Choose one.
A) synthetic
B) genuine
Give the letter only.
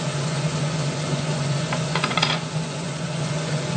A